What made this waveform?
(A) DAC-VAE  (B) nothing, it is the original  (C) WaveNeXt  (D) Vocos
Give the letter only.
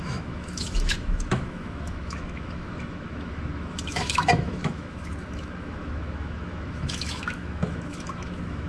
A